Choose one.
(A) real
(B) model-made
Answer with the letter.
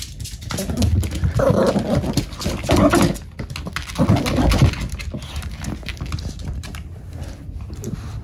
A